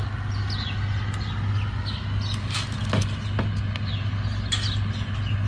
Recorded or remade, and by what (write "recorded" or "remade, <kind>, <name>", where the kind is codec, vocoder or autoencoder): recorded